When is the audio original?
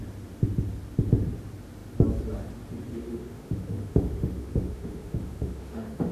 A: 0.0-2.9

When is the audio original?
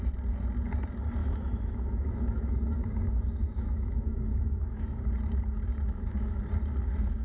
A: 0.0-1.2; 5.0-5.7; 6.4-7.2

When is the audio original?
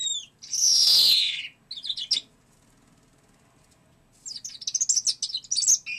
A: 0.0-6.0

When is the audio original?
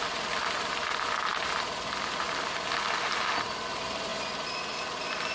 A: 0.0-5.3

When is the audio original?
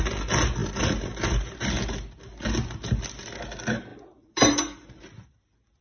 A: 0.0-5.8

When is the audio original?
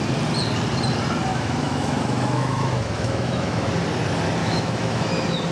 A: 0.0-1.3; 3.7-4.4; 5.1-5.5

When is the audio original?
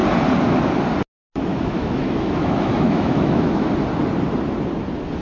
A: 0.0-1.5; 3.7-5.2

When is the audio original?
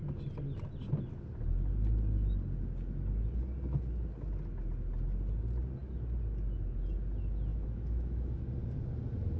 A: 0.0-7.5; 8.4-9.4